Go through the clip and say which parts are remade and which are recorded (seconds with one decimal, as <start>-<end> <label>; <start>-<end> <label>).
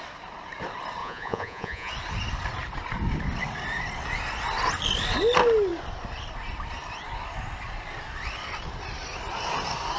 0.0-1.0 recorded; 1.0-1.9 remade; 1.9-10.0 recorded